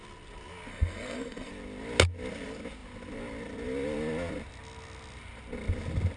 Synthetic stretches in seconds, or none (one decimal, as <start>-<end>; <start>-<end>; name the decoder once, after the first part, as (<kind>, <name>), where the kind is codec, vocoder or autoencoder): 0.7-1.5 (codec, SNAC)